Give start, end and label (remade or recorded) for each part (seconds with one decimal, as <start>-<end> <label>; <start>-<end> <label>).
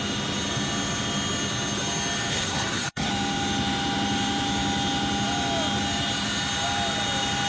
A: 0.0-2.3 recorded; 2.3-3.1 remade; 3.1-7.5 recorded